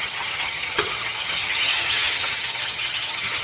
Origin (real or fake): fake